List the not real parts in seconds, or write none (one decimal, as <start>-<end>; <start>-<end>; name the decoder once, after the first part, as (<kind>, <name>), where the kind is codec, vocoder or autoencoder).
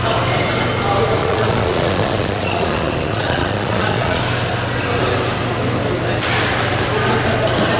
1.2-4.2 (vocoder, Vocos)